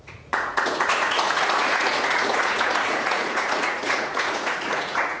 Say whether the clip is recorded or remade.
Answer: remade